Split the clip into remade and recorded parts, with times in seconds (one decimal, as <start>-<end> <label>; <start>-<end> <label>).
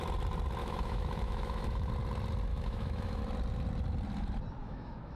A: 0.0-0.6 recorded; 0.6-1.9 remade; 1.9-2.5 recorded; 2.5-3.2 remade; 3.2-4.6 recorded; 4.6-5.2 remade